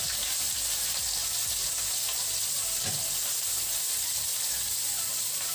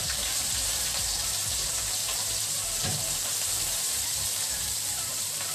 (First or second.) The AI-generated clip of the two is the second